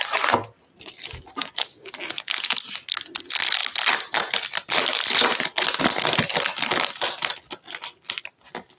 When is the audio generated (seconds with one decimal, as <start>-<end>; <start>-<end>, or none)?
none